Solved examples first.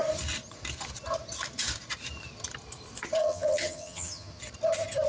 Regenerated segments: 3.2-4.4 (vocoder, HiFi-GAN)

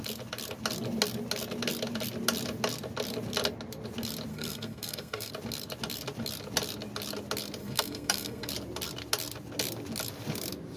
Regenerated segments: 4.3-5.3 (codec, SNAC); 7.6-8.5

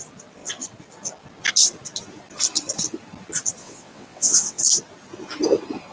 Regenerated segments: 3.6-4.6 (vocoder, WaveNeXt)

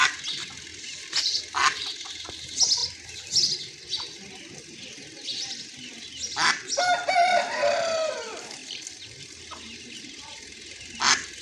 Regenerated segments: 0.7-1.4 (vocoder, BigVGAN v2); 8.6-9.4

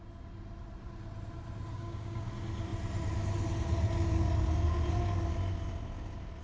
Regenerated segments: 1.7-2.3 (codec, DAC)

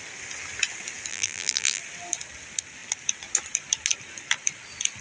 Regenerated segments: 1.1-1.8 (vocoder, BigVGAN v2)